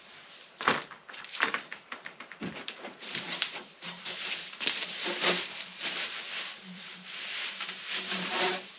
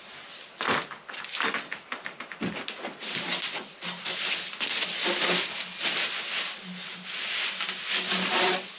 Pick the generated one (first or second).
first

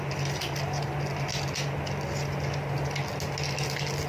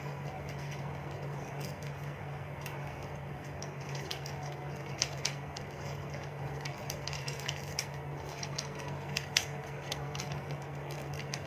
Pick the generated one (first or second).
second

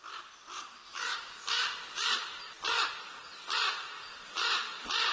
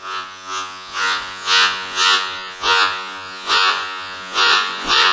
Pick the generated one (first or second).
second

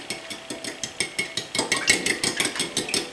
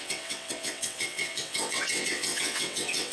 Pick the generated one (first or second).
second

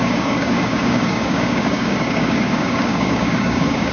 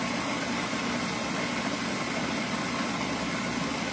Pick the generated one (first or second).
first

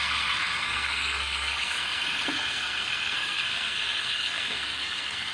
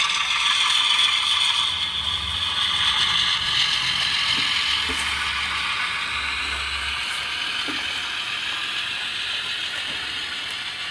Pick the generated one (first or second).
first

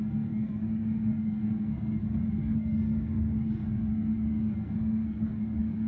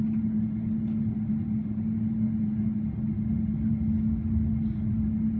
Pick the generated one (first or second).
first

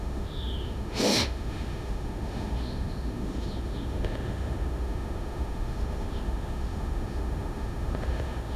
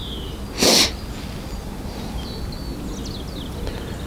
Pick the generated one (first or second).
first